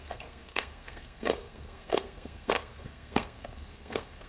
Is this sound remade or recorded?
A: remade